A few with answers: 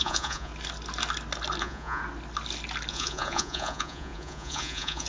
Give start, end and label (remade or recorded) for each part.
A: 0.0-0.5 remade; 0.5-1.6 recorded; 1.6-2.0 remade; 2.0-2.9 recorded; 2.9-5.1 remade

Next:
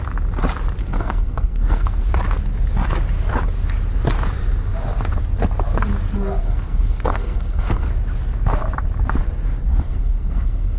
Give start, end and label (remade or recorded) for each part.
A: 0.0-0.8 recorded; 0.8-2.1 remade; 2.1-6.4 recorded; 6.4-7.9 remade; 7.9-9.7 recorded; 9.7-10.8 remade

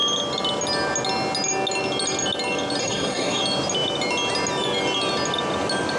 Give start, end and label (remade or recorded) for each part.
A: 0.0-2.8 recorded; 2.8-3.4 remade; 3.4-6.0 recorded

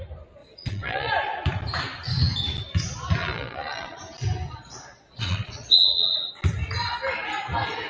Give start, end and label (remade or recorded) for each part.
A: 0.0-0.4 recorded; 0.4-1.1 remade; 1.1-3.2 recorded; 3.2-4.0 remade; 4.0-4.5 recorded; 4.5-6.3 remade; 6.3-7.9 recorded